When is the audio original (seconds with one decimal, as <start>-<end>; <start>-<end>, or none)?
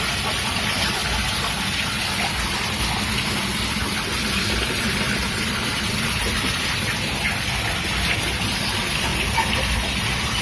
1.0-4.8; 9.1-9.6